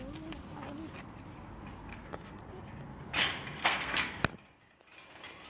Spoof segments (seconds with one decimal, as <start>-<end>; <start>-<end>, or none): 1.9-2.4; 3.6-4.2